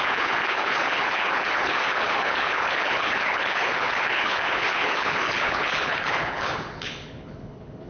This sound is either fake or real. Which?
fake